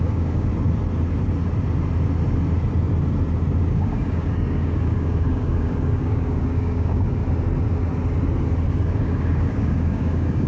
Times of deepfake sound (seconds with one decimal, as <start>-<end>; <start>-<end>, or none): 0.0-0.5; 3.6-7.2; 8.9-10.5